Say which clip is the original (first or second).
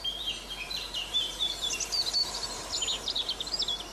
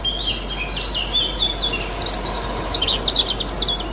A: second